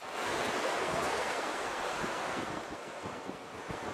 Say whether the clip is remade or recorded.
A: remade